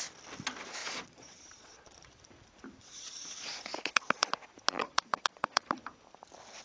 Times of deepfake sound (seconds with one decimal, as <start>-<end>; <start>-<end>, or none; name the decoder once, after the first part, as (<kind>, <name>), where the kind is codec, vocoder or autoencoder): 0.8-2.2 (vocoder, Vocos); 2.8-4.3; 4.8-5.7